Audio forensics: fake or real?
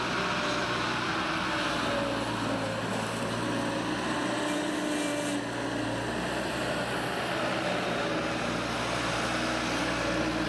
real